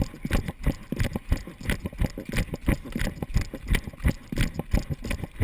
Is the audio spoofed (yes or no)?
no